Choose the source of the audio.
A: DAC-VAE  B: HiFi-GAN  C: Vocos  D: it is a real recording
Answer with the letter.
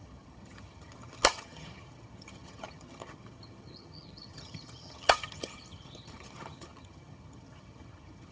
B